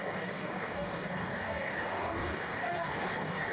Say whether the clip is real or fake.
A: fake